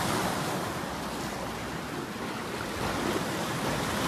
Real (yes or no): yes